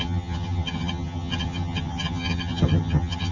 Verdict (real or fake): fake